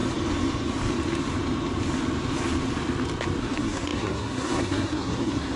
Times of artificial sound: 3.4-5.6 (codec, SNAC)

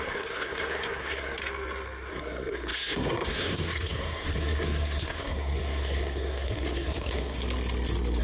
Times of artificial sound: 0.0-1.4 (codec, SNAC); 2.1-7.4

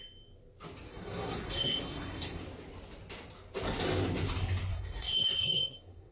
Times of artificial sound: 0.9-2.4 (codec, SNAC); 4.7-6.1

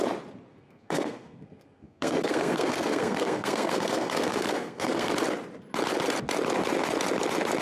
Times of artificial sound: 0.5-5.1 (codec, SNAC)